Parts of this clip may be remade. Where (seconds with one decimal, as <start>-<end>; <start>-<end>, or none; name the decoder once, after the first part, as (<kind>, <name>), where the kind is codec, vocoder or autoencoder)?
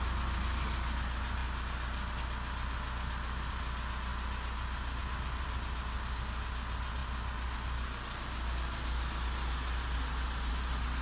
none